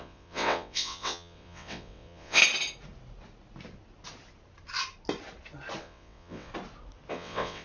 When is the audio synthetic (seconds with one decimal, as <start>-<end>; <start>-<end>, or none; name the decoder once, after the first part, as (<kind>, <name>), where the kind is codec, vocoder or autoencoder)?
0.0-2.4 (vocoder, WaveNeXt); 5.8-6.5; 7.1-7.6